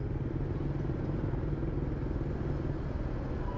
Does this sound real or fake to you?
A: real